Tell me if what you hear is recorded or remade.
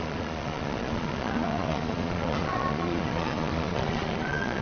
remade